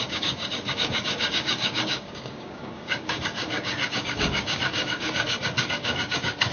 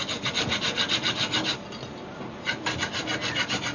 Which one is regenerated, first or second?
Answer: first